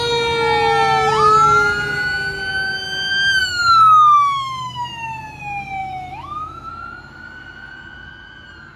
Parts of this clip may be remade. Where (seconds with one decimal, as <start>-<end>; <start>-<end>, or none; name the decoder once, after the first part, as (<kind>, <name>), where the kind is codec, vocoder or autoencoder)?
3.4-4.8 (autoencoder, DAC-VAE); 5.8-6.7

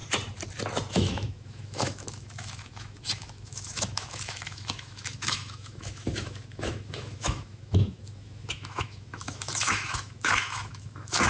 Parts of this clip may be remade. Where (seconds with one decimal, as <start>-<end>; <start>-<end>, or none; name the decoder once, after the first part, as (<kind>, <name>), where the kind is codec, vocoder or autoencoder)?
0.9-11.3 (autoencoder, DAC-VAE)

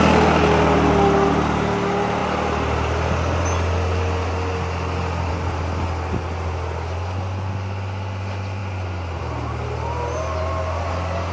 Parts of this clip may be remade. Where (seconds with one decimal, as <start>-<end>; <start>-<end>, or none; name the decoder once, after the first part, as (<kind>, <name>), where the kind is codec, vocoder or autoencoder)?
none